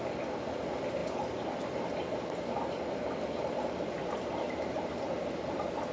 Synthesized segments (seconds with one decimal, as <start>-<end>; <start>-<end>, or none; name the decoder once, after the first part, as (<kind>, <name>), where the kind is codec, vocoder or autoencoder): none